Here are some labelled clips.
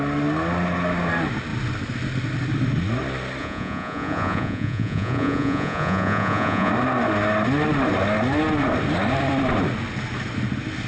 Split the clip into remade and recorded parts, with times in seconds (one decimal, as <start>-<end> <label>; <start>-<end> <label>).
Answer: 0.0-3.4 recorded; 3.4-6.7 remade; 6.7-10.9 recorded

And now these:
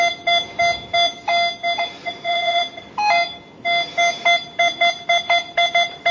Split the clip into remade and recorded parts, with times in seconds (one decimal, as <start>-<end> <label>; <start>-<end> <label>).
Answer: 0.0-2.0 recorded; 2.0-2.6 remade; 2.6-6.1 recorded

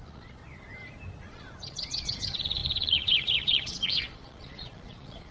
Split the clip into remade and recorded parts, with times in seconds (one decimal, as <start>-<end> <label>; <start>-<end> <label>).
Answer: 0.0-0.4 remade; 0.4-1.2 recorded; 1.2-5.3 remade